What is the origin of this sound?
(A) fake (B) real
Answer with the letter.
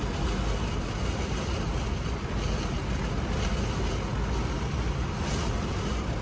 B